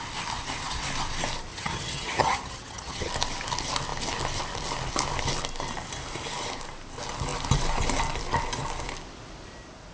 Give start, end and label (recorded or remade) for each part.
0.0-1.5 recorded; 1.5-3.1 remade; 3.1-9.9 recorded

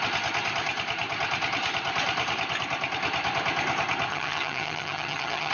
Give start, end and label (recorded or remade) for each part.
0.0-4.1 recorded; 4.1-5.5 remade

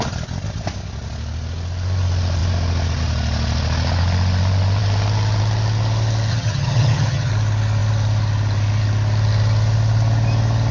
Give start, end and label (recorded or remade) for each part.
0.0-6.3 recorded; 6.3-7.3 remade; 7.3-10.7 recorded

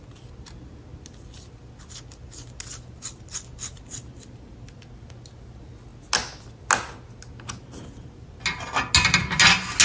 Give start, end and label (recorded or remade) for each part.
0.0-9.8 recorded

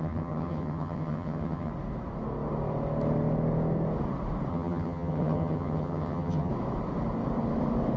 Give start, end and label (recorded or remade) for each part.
0.0-1.7 remade; 1.7-4.5 recorded; 4.5-6.5 remade; 6.5-8.0 recorded

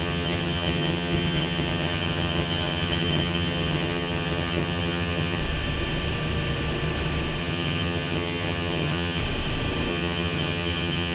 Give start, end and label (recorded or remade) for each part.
0.0-5.4 remade; 5.4-7.4 recorded; 7.4-9.2 remade; 9.2-9.9 recorded; 9.9-11.1 remade